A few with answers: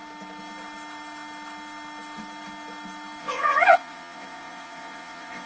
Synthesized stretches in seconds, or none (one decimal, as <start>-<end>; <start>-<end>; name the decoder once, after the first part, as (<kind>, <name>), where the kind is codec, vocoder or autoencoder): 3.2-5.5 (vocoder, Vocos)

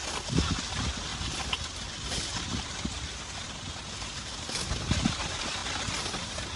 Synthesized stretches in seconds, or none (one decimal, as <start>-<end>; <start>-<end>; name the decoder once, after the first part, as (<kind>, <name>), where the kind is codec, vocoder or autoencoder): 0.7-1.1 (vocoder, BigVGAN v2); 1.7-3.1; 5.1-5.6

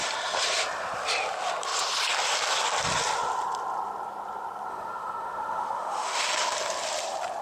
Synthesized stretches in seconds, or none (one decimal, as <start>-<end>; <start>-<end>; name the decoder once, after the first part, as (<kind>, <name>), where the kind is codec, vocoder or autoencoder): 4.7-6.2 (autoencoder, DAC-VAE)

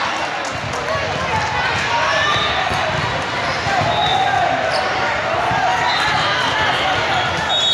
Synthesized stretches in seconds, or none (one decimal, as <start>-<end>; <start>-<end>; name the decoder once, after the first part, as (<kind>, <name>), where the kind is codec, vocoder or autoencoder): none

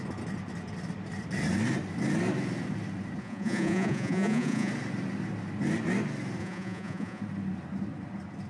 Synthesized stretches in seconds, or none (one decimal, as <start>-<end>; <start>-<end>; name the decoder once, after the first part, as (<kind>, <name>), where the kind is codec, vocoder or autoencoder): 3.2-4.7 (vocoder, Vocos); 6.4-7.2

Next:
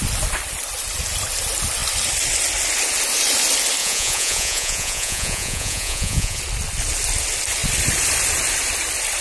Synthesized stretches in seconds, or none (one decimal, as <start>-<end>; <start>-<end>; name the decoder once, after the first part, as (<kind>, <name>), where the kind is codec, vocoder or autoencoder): 3.8-6.4 (vocoder, Vocos)